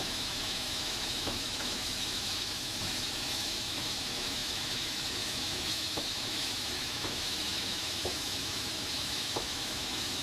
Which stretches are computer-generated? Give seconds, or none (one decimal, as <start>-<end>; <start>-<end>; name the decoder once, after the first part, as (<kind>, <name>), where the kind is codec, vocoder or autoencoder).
0.0-10.2 (autoencoder, DAC-VAE)